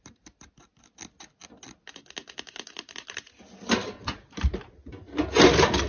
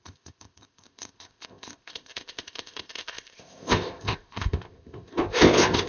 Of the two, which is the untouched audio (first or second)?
first